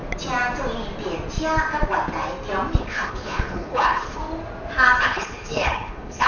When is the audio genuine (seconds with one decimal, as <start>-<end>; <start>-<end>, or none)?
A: 0.0-2.8; 4.2-5.0